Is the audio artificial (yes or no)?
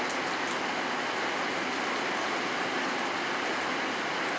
no